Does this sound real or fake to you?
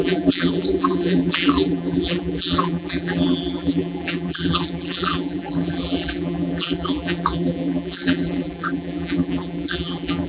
fake